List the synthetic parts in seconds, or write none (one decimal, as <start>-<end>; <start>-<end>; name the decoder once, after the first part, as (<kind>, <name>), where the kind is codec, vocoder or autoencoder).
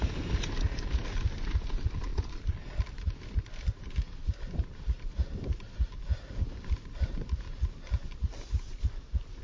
none